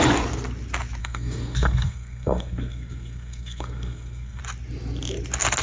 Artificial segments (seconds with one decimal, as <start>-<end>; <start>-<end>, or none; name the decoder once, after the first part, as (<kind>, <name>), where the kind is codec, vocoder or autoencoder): 1.0-4.4 (codec, SNAC)